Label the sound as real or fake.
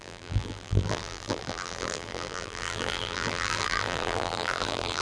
fake